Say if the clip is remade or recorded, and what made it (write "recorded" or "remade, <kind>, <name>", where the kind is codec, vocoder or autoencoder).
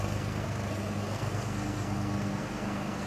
remade, codec, SNAC